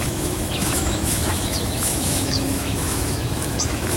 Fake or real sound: fake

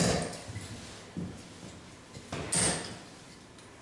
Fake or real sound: real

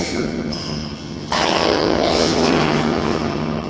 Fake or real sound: fake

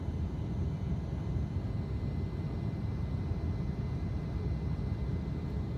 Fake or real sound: real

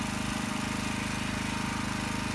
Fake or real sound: real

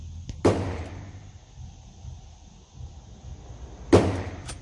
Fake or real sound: real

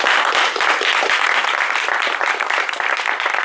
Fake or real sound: real